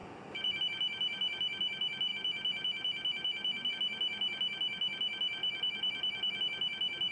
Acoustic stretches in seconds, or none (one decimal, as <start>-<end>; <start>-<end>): 0.6-5.4; 6.4-7.1

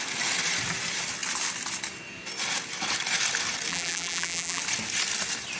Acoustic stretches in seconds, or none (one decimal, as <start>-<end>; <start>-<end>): 0.0-3.7; 4.6-5.6

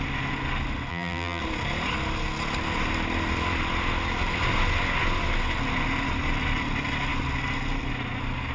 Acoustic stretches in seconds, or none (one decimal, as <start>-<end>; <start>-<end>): 0.0-0.9; 1.4-8.5

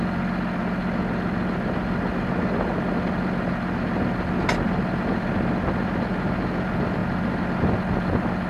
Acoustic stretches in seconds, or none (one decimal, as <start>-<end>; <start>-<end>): 0.0-8.5

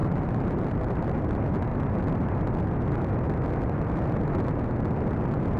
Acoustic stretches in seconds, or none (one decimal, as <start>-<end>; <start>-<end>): 1.2-5.6